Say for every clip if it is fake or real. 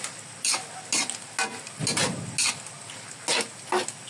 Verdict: real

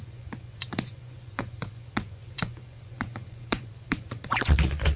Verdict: fake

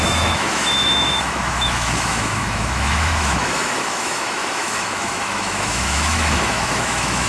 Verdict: fake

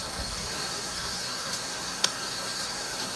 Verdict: fake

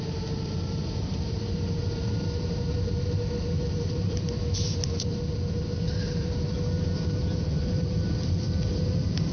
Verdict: fake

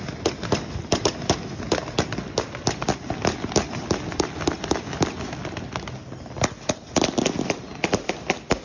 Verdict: real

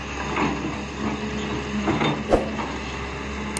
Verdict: real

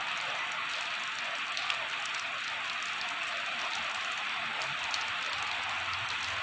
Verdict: real